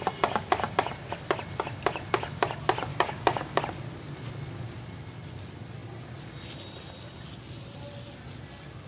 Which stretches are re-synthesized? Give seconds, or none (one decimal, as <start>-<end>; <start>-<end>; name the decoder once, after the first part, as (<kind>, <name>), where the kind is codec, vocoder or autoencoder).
2.9-3.6 (codec, DAC)